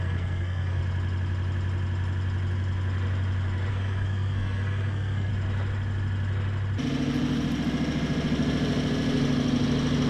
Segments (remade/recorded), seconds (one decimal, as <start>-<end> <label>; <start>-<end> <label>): 0.0-0.8 remade; 0.8-3.7 recorded; 3.7-5.3 remade; 5.3-10.1 recorded